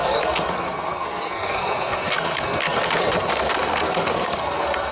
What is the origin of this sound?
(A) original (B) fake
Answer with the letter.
B